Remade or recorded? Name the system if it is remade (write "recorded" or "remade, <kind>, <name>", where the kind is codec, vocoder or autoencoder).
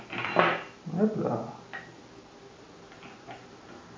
recorded